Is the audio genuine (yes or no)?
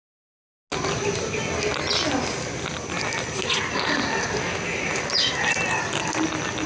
yes